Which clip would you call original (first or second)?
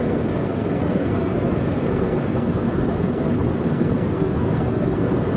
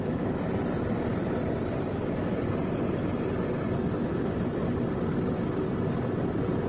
second